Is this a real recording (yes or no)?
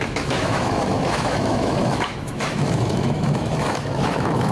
no